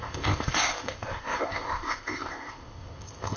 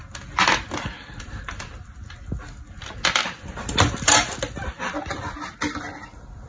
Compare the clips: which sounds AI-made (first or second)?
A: first